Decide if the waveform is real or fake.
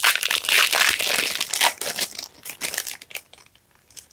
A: real